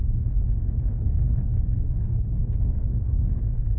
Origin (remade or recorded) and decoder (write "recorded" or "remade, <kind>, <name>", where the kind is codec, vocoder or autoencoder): remade, codec, SNAC